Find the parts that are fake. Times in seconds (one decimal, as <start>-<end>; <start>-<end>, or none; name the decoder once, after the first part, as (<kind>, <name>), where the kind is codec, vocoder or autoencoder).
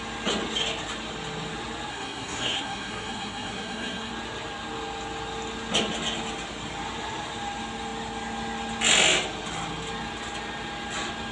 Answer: 1.9-4.1 (codec, SNAC)